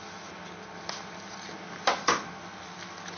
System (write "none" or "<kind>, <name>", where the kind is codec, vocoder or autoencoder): none